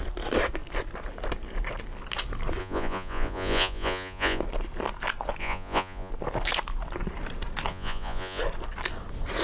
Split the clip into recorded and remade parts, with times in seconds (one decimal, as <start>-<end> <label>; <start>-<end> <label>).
0.0-2.6 recorded; 2.6-4.4 remade; 4.4-5.4 recorded; 5.4-6.1 remade; 6.1-7.7 recorded; 7.7-8.4 remade; 8.4-9.4 recorded